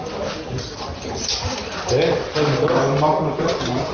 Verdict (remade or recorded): recorded